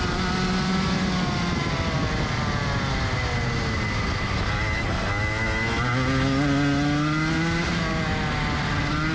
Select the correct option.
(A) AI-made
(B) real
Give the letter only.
B